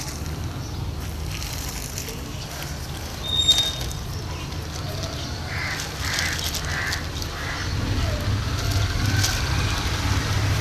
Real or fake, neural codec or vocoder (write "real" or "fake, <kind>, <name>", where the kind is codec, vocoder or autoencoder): real